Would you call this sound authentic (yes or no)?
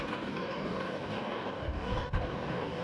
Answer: no